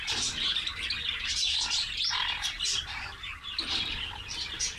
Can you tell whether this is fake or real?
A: real